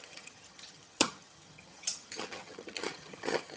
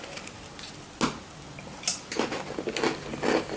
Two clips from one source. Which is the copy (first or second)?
first